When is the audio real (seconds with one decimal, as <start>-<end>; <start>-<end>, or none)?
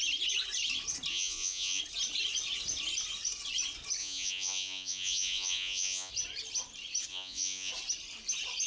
0.0-1.1; 1.8-4.0; 6.1-7.1; 7.7-8.7